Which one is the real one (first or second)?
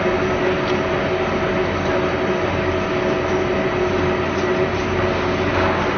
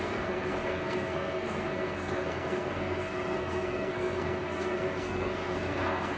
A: first